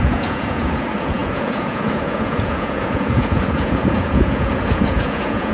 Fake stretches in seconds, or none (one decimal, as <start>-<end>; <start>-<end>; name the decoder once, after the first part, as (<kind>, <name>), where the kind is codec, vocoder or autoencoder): 0.0-5.5 (vocoder, Vocos)